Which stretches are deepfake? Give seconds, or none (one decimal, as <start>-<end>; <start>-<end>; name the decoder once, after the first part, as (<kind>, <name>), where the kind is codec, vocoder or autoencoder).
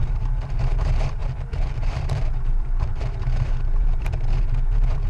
0.0-5.1 (vocoder, BigVGAN v2)